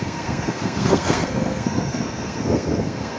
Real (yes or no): no